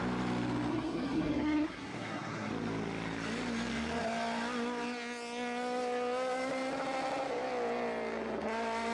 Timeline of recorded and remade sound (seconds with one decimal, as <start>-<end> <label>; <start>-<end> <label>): 0.0-0.7 recorded; 0.7-2.5 remade; 2.5-8.9 recorded